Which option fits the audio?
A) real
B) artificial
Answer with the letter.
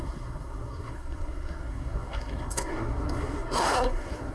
B